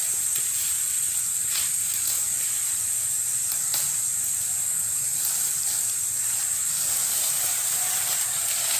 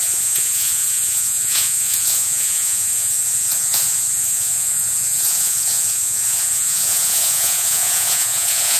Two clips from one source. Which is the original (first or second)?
first